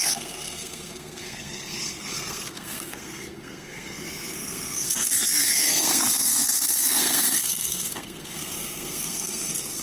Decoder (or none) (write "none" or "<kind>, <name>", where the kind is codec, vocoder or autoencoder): codec, SNAC